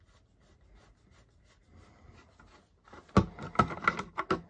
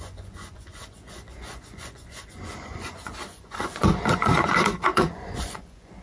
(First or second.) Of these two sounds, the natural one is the first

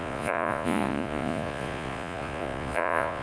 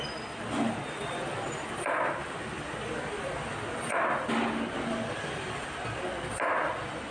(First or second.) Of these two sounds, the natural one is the second